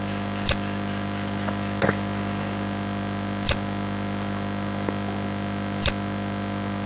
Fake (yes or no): no